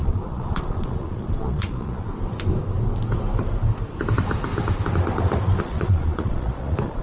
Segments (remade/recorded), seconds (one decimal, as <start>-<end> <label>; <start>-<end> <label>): 0.0-2.1 remade; 2.1-5.6 recorded; 5.6-7.0 remade